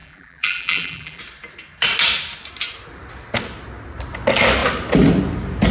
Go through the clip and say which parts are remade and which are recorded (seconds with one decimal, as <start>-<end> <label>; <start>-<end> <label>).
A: 0.0-1.2 remade; 1.2-5.7 recorded